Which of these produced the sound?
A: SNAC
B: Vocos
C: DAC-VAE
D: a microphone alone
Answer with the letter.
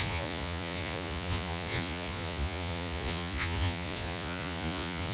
B